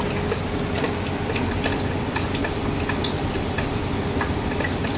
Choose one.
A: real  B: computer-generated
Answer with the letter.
A